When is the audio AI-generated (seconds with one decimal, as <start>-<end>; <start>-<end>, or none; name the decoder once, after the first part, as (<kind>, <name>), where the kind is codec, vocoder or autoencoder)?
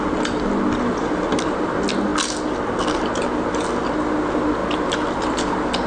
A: none